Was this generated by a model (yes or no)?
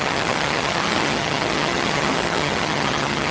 yes